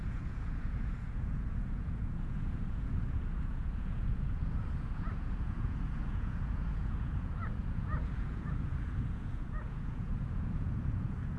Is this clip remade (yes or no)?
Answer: yes